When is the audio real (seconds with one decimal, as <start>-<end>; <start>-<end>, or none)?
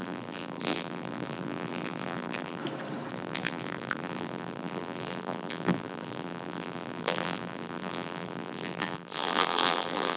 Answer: 2.6-3.1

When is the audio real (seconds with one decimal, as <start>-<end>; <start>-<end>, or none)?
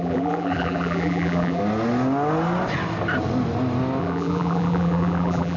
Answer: 1.6-4.0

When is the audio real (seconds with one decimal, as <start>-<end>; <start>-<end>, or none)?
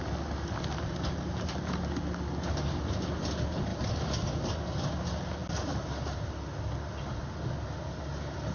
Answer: 0.0-3.7; 4.8-8.5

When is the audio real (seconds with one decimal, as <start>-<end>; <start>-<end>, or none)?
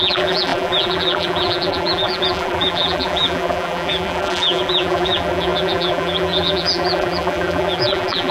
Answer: none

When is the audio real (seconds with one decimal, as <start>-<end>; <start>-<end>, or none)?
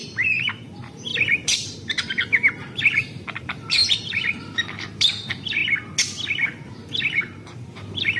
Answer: 5.6-6.7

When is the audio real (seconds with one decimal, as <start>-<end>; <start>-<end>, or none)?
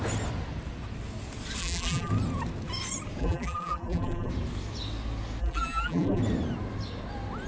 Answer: 0.0-1.6; 2.1-3.2; 4.3-5.4; 6.2-7.5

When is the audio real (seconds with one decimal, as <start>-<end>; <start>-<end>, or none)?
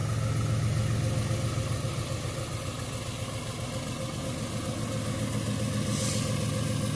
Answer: 0.0-7.0